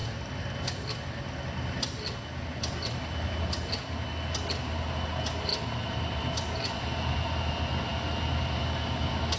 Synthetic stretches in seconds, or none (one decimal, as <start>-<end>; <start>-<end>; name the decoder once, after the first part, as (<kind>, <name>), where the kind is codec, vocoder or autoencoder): none